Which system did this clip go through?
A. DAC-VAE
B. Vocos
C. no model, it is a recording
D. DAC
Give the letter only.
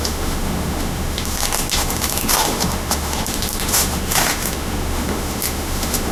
A